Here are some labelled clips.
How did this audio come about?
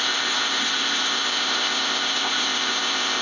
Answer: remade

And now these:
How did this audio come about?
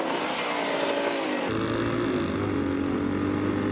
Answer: recorded